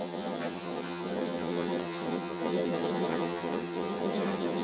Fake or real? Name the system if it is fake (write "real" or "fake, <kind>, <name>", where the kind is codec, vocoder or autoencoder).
fake, vocoder, HiFi-GAN